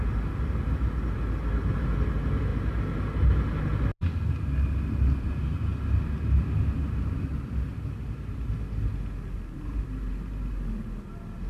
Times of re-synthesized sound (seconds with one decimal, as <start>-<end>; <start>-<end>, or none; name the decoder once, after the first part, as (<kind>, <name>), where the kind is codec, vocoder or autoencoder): 2.5-3.6 (vocoder, BigVGAN v2)